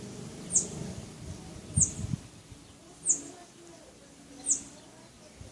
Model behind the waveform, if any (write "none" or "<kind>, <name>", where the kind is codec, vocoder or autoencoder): none